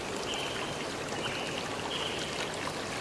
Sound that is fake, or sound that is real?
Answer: real